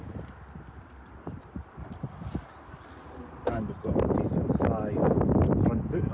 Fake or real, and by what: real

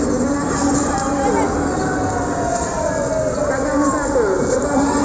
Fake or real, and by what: real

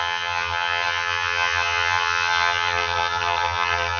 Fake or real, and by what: fake, vocoder, HiFi-GAN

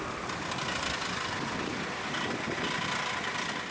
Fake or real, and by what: real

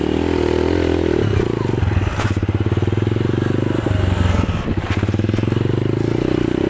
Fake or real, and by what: real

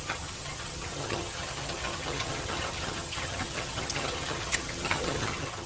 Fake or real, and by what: fake, vocoder, HiFi-GAN